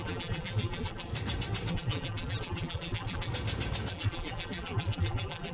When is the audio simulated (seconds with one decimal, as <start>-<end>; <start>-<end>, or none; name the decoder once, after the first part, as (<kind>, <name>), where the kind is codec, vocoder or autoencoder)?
0.0-1.1 (vocoder, BigVGAN v2); 1.7-3.3; 3.9-5.5